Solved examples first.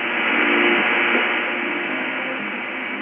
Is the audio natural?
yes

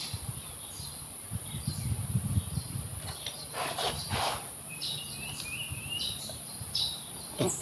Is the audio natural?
no